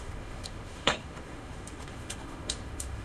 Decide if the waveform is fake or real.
fake